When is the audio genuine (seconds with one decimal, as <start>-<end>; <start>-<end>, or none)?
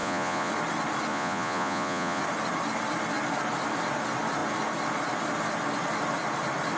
0.5-1.1; 2.2-6.8